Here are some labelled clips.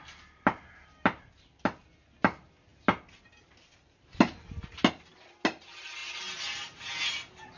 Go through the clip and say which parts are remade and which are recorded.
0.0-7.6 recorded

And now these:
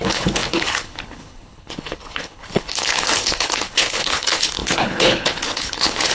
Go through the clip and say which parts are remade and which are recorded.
0.0-6.1 remade

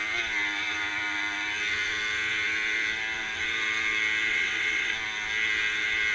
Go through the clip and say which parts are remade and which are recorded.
0.0-4.3 recorded; 4.3-4.9 remade; 4.9-6.1 recorded